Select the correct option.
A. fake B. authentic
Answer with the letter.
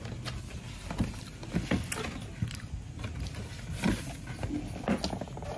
B